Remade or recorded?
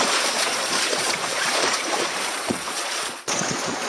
remade